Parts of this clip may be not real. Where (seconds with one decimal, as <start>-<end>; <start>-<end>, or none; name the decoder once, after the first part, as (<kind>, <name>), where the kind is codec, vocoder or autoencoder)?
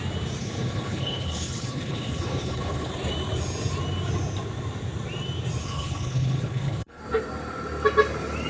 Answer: 0.4-2.9 (codec, HILCodec); 5.6-7.0